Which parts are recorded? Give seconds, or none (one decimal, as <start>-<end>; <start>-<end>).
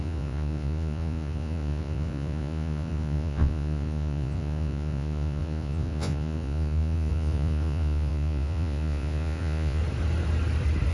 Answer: 9.8-10.9